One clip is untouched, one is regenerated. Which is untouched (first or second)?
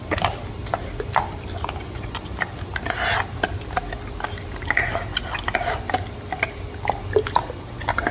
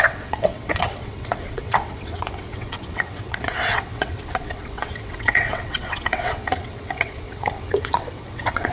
first